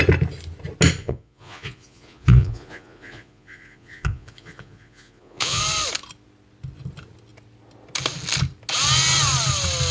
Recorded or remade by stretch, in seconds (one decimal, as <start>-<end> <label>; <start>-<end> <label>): 0.0-1.0 recorded; 1.0-5.6 remade; 5.6-9.9 recorded